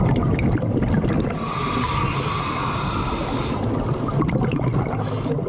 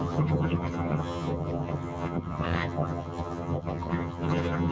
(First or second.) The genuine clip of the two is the first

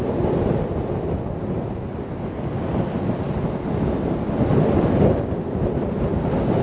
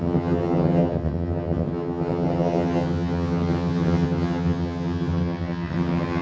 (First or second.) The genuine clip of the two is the first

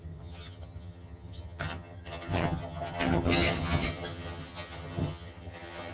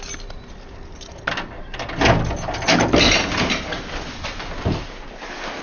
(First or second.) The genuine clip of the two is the second